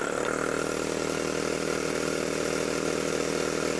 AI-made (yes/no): no